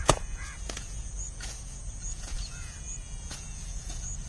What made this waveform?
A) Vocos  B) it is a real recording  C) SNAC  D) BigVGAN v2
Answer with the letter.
A